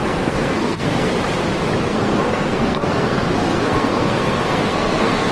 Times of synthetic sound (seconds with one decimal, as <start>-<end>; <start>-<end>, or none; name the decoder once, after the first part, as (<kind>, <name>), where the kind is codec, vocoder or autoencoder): 0.0-1.1 (codec, SNAC); 1.9-5.3